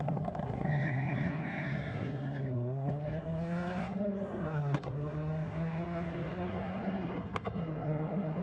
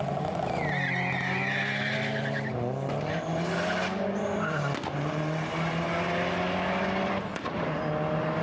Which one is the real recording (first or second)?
second